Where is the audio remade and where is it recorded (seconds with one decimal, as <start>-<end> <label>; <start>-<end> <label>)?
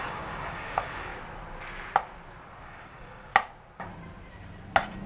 0.0-1.1 remade; 1.1-2.6 recorded; 2.6-3.3 remade; 3.3-5.1 recorded